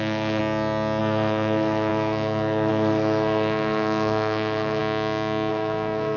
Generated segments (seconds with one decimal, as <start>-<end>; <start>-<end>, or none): 0.0-0.4; 1.0-4.8; 5.5-6.2